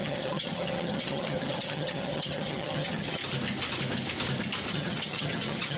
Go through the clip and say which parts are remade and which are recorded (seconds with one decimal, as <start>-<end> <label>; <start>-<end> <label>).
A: 0.0-3.2 remade; 3.2-4.7 recorded; 4.7-5.8 remade